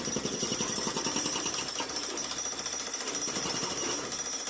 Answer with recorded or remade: recorded